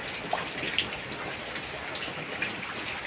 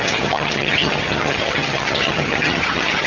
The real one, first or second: first